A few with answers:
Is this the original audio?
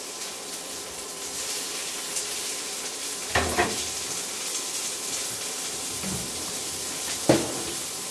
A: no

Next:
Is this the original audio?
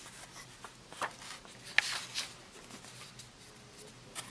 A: yes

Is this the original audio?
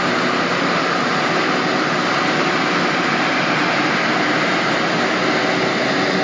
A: yes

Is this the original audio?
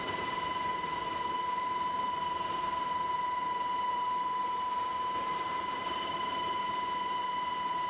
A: no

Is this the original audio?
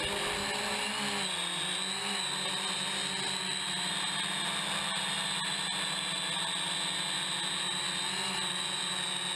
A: yes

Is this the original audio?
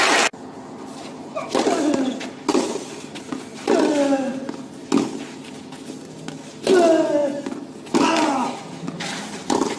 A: yes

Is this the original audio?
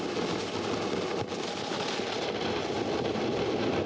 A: yes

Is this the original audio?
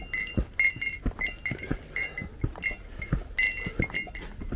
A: yes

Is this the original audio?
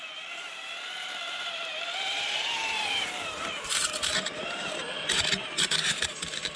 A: no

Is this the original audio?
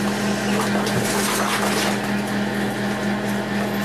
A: yes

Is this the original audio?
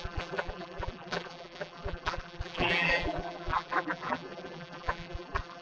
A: no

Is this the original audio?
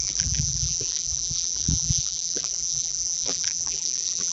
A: no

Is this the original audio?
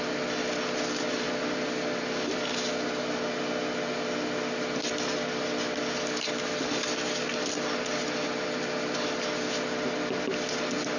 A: yes